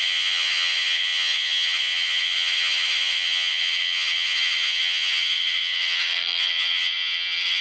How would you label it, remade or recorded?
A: remade